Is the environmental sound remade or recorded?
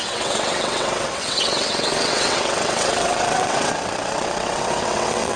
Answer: remade